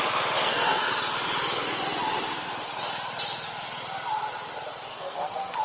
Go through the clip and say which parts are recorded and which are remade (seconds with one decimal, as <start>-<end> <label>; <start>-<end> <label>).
0.0-0.4 recorded; 0.4-0.9 remade; 0.9-4.9 recorded; 4.9-5.6 remade